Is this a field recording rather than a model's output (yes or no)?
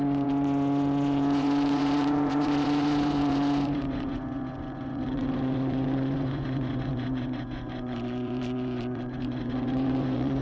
no